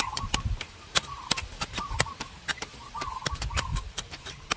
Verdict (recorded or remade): remade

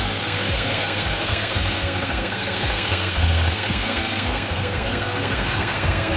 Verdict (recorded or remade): remade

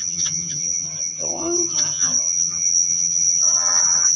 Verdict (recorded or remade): remade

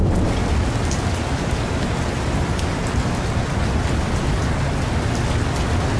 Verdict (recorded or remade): recorded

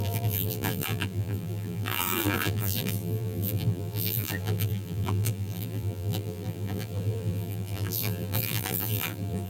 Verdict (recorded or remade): remade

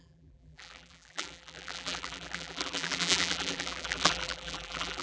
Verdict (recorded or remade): remade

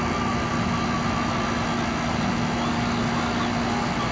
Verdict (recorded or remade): recorded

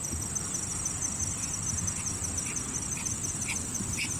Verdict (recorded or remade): recorded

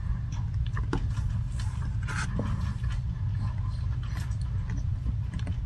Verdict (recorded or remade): recorded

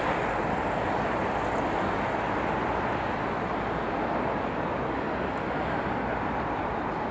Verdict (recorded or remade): recorded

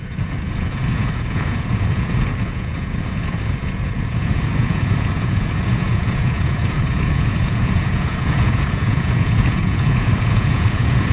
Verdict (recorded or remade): remade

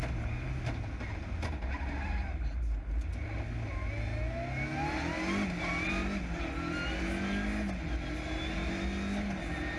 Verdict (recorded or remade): recorded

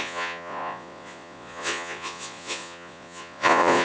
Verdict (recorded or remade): remade